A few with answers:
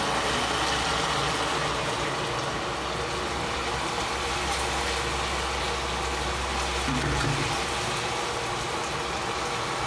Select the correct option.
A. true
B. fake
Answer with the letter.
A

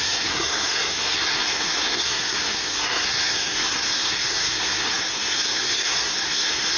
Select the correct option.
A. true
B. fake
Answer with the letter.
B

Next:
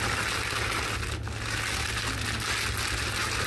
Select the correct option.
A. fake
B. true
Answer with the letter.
B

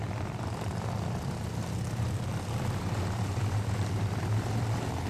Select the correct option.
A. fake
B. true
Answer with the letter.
A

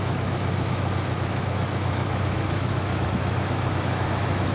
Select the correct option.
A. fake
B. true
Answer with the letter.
A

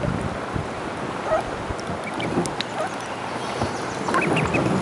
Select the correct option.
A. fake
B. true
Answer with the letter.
B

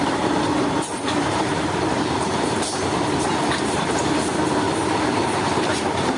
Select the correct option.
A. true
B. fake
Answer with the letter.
B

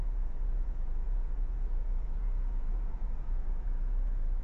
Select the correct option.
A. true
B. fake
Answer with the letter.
B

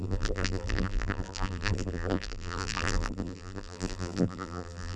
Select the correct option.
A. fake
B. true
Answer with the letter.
A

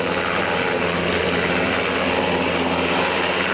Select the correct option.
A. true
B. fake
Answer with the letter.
A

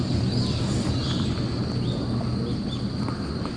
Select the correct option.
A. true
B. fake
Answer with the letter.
A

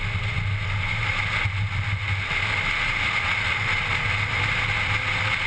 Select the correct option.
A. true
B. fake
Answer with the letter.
A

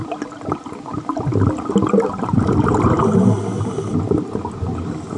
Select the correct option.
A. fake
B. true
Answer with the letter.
B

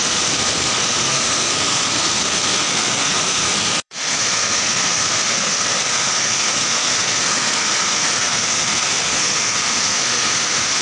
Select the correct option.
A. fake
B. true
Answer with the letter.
A